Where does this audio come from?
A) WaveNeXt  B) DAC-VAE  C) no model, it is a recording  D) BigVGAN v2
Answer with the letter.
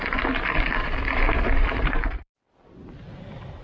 D